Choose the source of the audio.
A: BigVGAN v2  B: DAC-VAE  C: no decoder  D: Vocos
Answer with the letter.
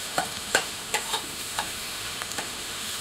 B